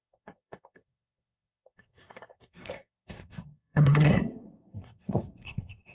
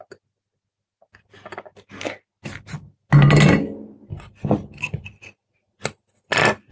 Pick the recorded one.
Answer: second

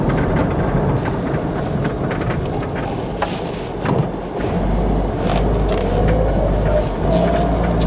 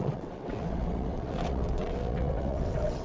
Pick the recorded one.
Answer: first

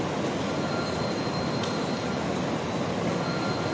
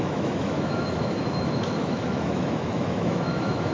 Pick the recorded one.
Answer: first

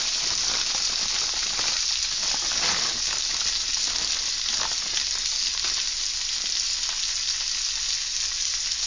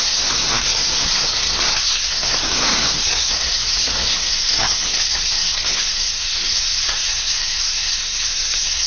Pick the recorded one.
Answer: first